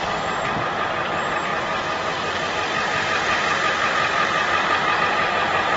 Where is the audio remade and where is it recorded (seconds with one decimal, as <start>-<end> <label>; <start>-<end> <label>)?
0.0-5.8 recorded